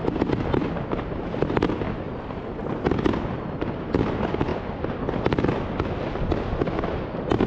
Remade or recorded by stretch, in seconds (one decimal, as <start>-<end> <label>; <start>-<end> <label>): 0.0-7.5 recorded

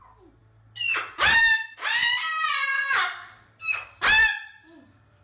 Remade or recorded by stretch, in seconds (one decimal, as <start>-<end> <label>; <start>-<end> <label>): 0.0-5.2 recorded

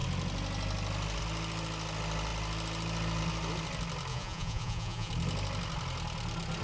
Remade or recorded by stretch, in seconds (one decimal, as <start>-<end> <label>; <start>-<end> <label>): 0.0-4.1 recorded; 4.1-5.1 remade; 5.1-6.6 recorded

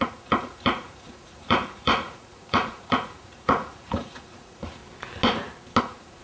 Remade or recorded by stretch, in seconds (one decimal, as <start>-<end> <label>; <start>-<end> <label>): 0.0-4.8 remade; 4.8-5.8 recorded; 5.8-6.2 remade

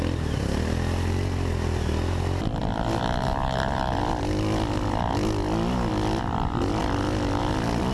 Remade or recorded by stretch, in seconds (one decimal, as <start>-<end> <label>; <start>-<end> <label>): 0.0-7.9 recorded

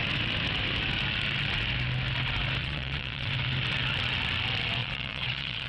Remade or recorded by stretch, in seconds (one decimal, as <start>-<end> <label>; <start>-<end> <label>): 0.0-2.6 recorded; 2.6-3.3 remade; 3.3-4.8 recorded; 4.8-5.7 remade

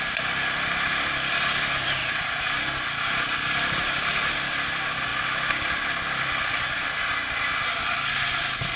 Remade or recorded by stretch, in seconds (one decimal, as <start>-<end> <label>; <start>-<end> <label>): 0.0-2.0 recorded; 2.0-2.5 remade; 2.5-8.8 recorded

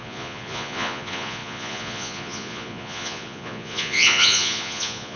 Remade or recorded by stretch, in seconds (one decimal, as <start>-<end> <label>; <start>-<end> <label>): 0.0-5.2 remade